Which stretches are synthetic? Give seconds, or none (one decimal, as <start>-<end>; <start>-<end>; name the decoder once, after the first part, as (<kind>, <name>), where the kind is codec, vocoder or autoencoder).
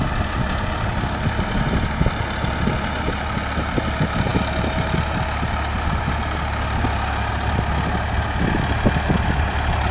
none